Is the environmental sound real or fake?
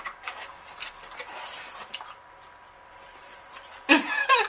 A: real